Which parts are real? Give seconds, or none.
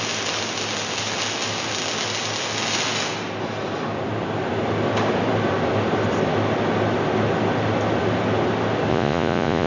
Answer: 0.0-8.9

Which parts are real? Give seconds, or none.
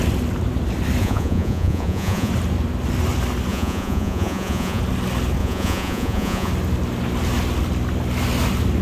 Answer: 0.0-1.0; 2.3-3.5; 4.8-5.4; 6.5-8.8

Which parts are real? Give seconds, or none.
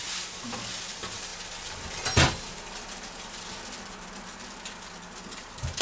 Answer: 0.0-5.8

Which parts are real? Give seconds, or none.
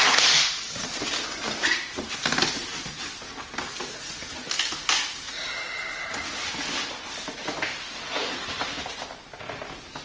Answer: 0.0-10.0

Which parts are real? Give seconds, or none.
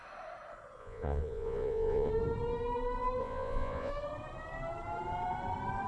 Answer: 0.0-0.8; 2.1-3.2; 3.9-5.9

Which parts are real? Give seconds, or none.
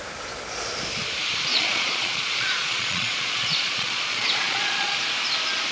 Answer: 0.0-1.5; 4.9-5.7